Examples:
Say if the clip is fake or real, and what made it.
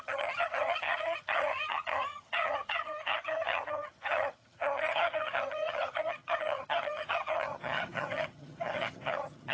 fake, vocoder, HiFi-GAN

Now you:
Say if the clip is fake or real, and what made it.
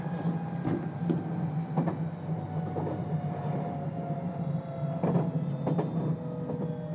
real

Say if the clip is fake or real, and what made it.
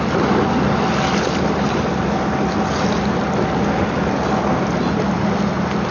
real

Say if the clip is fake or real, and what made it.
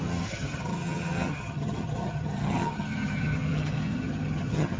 fake, vocoder, HiFi-GAN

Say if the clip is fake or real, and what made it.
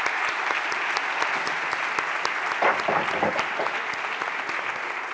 real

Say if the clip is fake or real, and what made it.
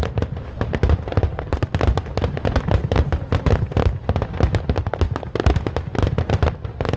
real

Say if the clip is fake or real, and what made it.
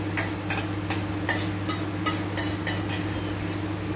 real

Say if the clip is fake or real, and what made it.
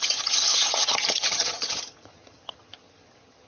fake, vocoder, HiFi-GAN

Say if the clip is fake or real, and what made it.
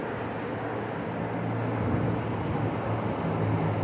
real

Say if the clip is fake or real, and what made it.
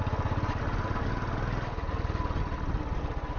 real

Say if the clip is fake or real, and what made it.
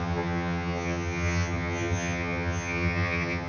fake, vocoder, HiFi-GAN